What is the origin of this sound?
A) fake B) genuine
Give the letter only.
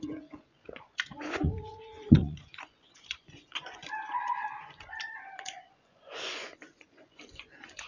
A